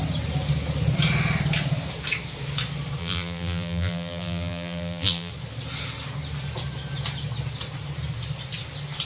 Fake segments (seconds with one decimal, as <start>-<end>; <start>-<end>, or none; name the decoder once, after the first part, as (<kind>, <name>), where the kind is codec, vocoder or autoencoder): 3.0-5.3 (vocoder, BigVGAN v2)